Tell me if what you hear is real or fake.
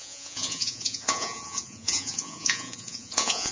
fake